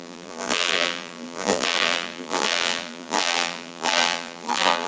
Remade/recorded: remade